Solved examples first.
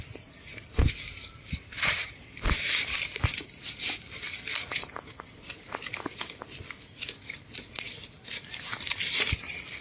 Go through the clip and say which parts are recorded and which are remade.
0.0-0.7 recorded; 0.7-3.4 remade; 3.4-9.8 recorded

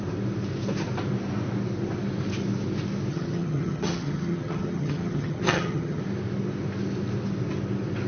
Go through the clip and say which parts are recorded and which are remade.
0.0-3.1 recorded; 3.1-6.0 remade; 6.0-8.1 recorded

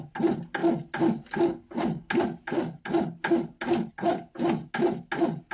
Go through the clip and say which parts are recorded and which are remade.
0.0-5.5 recorded

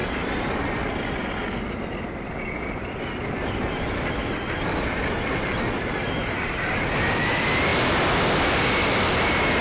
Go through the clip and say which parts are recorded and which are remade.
0.0-5.0 recorded; 5.0-5.6 remade; 5.6-9.6 recorded

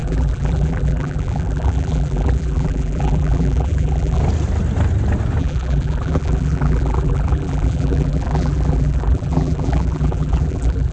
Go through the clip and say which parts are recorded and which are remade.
0.0-4.2 remade; 4.2-5.4 recorded; 5.4-10.9 remade

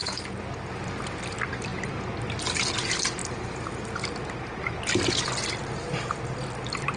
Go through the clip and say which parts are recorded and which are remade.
0.0-7.0 recorded